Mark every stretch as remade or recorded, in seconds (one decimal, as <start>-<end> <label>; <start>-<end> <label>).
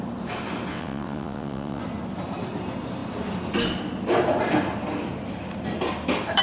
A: 0.0-0.7 recorded; 0.7-1.8 remade; 1.8-6.4 recorded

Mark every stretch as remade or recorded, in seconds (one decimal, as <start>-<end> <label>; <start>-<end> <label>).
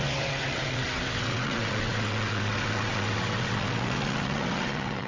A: 0.0-5.1 remade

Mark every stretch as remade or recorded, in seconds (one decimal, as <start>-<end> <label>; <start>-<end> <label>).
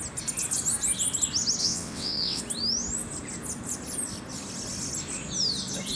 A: 0.0-1.6 recorded; 1.6-2.4 remade; 2.4-6.0 recorded